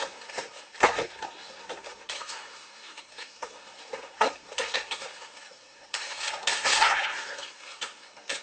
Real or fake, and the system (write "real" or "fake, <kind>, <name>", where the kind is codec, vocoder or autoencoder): fake, codec, SNAC